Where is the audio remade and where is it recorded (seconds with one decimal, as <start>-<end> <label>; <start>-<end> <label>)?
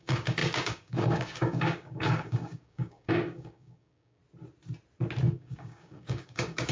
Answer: 0.0-4.2 remade; 4.2-5.3 recorded; 5.3-6.7 remade